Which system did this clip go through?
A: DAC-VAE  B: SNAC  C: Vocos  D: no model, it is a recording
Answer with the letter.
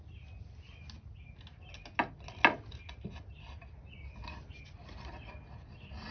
D